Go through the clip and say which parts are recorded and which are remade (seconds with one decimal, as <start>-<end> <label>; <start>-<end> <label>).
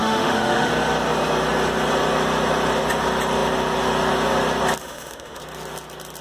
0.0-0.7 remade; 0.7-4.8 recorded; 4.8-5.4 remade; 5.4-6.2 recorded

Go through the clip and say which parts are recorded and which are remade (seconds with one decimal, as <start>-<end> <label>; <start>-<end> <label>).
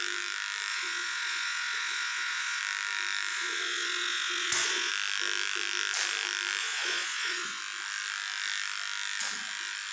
0.0-0.7 recorded; 0.7-2.6 remade; 2.6-3.3 recorded; 3.3-4.9 remade; 4.9-6.6 recorded; 6.6-7.6 remade; 7.6-9.9 recorded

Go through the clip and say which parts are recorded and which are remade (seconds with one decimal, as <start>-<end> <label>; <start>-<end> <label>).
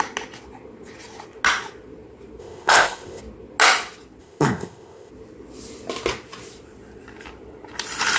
0.0-2.4 recorded; 2.4-3.2 remade; 3.2-4.2 recorded; 4.2-5.1 remade; 5.1-8.2 recorded